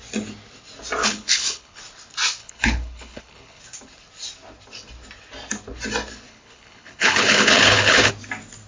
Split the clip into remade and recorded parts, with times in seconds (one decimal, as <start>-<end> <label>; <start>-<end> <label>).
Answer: 0.0-1.0 recorded; 1.0-1.8 remade; 1.8-2.4 recorded; 2.4-3.6 remade; 3.6-6.3 recorded; 6.3-8.1 remade; 8.1-8.7 recorded